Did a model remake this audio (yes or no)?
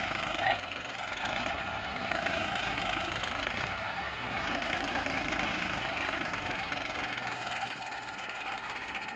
yes